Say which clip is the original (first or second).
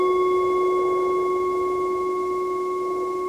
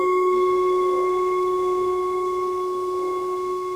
first